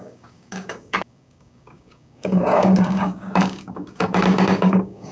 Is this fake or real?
fake